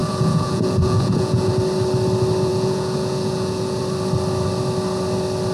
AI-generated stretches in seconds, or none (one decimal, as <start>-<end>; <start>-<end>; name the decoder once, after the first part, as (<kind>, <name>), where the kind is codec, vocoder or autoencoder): 0.0-1.5 (vocoder, Vocos); 2.5-3.8